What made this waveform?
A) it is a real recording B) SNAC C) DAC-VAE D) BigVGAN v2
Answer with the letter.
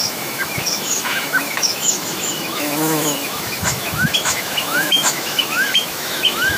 C